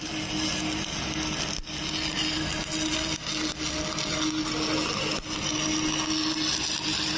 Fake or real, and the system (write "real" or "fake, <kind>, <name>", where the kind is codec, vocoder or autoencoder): real